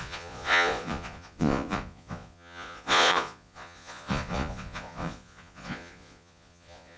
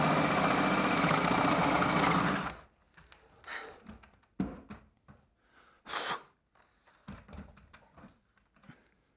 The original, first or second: second